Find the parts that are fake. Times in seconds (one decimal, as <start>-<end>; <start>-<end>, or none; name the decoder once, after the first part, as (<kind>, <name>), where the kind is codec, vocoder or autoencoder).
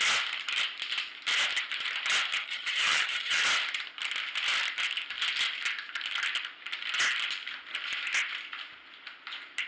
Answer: 2.4-3.4 (vocoder, HiFi-GAN)